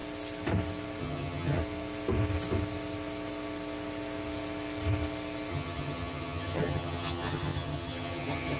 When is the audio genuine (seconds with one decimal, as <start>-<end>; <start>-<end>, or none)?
0.0-1.0; 1.6-5.5